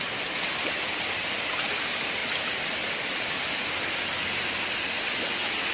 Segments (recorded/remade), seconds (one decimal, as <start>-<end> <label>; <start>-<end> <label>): 0.0-5.7 recorded